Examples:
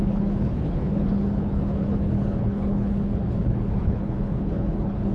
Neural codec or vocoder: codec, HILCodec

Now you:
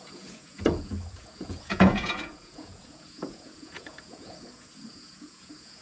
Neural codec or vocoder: vocoder, Vocos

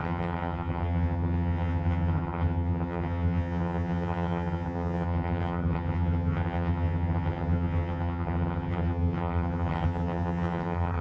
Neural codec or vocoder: vocoder, HiFi-GAN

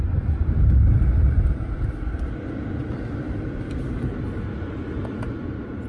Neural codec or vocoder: none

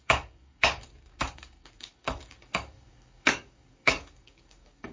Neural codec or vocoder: codec, DAC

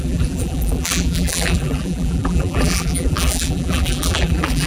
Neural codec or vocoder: vocoder, BigVGAN v2